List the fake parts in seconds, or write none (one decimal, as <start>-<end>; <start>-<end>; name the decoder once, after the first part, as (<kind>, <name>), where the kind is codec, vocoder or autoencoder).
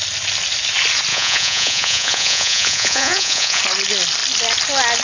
1.1-3.6 (vocoder, Vocos)